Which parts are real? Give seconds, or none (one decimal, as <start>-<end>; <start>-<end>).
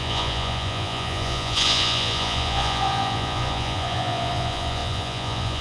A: none